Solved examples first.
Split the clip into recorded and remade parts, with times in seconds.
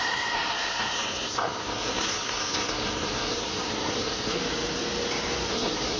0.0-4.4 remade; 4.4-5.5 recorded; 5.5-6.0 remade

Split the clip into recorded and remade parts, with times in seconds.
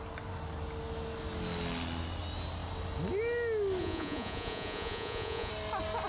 0.0-3.8 recorded; 3.8-5.5 remade; 5.5-6.1 recorded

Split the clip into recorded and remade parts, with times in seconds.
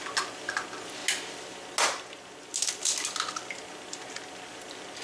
0.0-5.0 recorded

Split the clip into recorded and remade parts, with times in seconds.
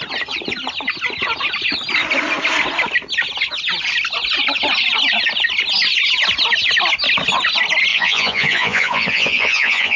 0.0-7.9 recorded; 7.9-10.0 remade